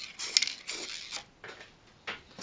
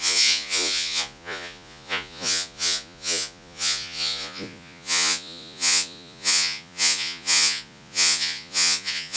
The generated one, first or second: second